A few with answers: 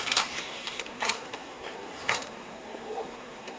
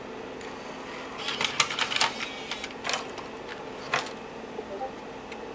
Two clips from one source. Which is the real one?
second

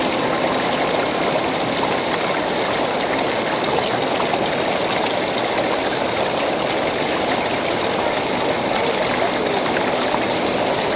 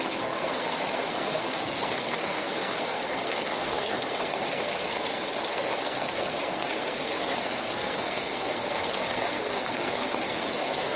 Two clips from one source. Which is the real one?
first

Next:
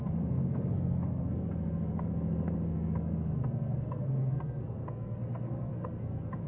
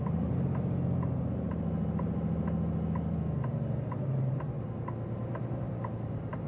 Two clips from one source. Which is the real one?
second